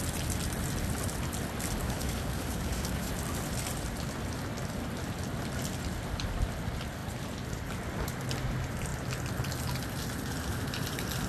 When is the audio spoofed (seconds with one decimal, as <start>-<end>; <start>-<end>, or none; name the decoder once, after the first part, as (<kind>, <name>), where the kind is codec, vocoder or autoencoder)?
1.8-3.1 (codec, DAC)